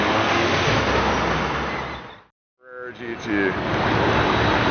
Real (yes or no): yes